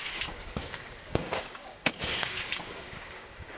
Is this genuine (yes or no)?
no